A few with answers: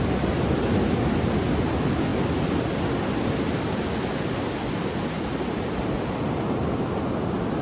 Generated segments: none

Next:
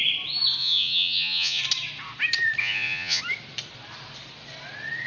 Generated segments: 0.6-1.6 (vocoder, Vocos); 2.6-3.2

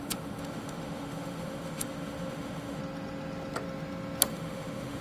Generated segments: 0.0-2.8 (autoencoder, DAC-VAE); 4.3-5.0

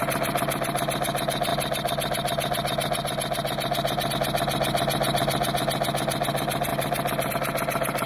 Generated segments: none

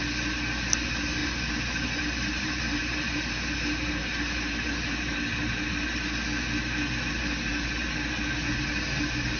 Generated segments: 1.2-5.7 (vocoder, BigVGAN v2)

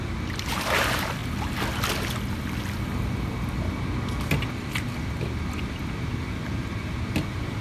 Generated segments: 0.0-1.2 (vocoder, BigVGAN v2); 5.8-7.6